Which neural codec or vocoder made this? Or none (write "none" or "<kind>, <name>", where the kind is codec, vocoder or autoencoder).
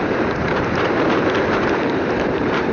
vocoder, BigVGAN v2